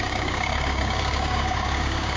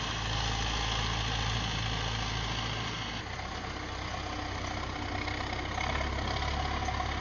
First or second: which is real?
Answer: second